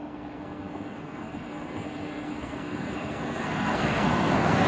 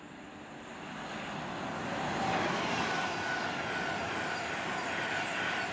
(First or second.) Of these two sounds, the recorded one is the second